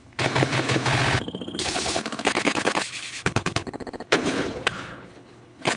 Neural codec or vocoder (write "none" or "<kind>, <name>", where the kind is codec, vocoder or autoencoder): codec, HILCodec